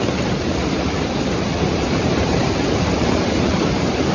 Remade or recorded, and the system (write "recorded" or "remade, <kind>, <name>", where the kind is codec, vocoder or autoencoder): remade, vocoder, BigVGAN v2